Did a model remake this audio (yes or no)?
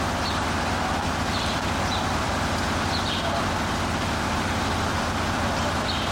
no